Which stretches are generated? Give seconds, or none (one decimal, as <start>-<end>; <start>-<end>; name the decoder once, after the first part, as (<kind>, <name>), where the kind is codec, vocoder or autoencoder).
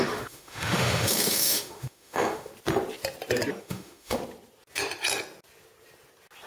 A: 0.0-2.5 (autoencoder, DAC-VAE); 3.6-4.2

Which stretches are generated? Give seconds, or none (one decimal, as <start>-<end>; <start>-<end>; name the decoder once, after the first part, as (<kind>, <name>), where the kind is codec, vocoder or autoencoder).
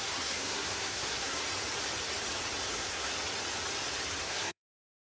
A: 0.0-1.4 (codec, SNAC); 2.7-3.1; 4.2-5.0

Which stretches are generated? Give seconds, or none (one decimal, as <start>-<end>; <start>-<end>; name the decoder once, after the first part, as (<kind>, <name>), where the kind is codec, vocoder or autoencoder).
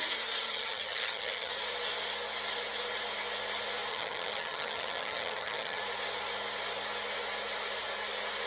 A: 0.5-1.5 (vocoder, HiFi-GAN); 3.9-5.8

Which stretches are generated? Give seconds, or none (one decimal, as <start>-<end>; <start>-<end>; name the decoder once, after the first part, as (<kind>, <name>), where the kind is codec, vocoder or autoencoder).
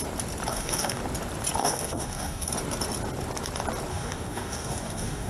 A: 0.5-1.0 (codec, DAC); 1.6-2.5; 3.9-5.3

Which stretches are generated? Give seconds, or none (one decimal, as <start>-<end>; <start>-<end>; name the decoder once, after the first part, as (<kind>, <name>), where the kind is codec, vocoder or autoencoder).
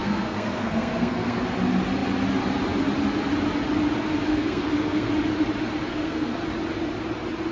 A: 0.0-1.4 (codec, SNAC); 4.3-5.1; 5.9-6.4